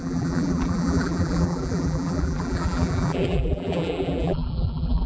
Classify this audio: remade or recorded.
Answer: remade